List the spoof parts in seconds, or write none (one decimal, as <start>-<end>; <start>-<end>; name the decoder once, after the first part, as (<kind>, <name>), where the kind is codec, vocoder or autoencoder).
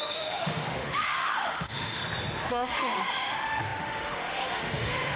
0.0-2.0 (autoencoder, DAC-VAE); 2.5-5.2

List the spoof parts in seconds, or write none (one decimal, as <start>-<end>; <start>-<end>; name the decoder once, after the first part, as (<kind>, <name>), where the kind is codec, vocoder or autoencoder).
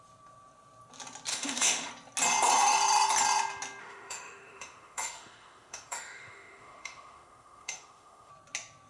1.3-1.9 (autoencoder, DAC-VAE); 3.8-8.3